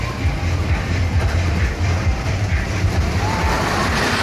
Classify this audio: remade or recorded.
remade